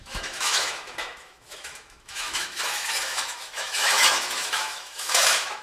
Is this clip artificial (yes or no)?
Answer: yes